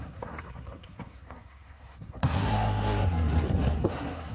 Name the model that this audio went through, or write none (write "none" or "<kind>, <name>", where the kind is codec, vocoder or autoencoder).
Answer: codec, SNAC